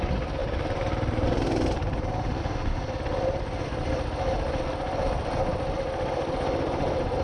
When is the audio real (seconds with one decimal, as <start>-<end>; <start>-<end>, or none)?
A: 0.0-0.4; 2.4-7.2